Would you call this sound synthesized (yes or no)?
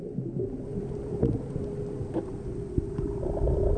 no